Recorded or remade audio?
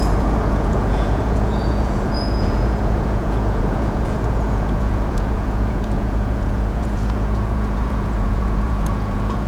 remade